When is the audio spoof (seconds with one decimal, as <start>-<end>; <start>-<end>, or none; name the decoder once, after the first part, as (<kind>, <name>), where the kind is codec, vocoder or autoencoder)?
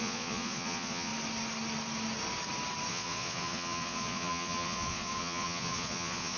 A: 0.0-1.1 (vocoder, Vocos); 2.9-6.4